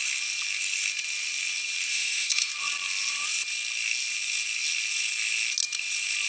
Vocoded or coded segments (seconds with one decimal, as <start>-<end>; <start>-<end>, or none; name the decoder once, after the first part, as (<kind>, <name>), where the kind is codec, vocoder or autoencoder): 1.9-2.5 (autoencoder, DAC-VAE)